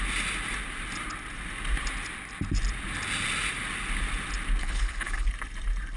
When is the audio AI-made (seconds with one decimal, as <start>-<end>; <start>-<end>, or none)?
4.6-5.3